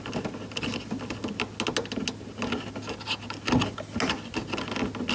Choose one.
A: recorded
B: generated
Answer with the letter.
A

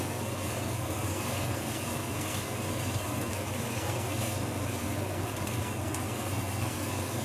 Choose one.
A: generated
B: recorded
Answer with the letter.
A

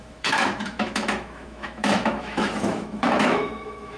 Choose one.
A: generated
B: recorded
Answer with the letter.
A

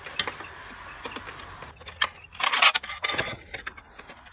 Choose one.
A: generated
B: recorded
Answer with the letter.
B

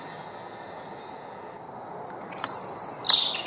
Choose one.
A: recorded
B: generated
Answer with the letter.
A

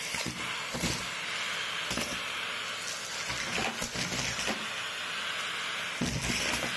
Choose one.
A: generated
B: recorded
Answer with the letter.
B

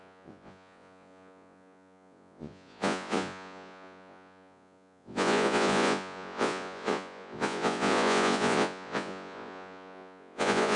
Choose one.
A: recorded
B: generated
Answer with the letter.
B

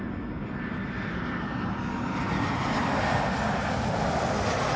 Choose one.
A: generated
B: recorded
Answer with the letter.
B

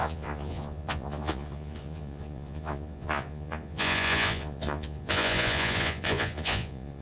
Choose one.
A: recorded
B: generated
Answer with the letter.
B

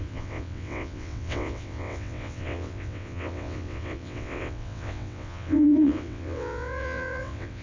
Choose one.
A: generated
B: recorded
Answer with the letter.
A